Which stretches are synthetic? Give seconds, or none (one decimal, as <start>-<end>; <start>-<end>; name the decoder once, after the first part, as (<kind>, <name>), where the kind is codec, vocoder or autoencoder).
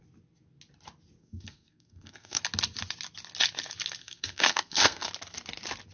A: 1.2-2.4 (codec, SNAC); 4.0-5.1